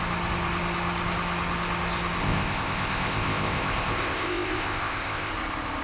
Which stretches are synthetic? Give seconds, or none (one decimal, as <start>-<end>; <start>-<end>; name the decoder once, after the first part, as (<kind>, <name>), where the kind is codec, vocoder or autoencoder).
2.2-5.3 (codec, ZipCodec)